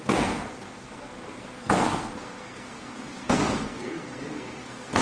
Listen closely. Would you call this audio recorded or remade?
remade